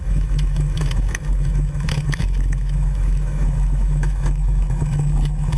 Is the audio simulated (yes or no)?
yes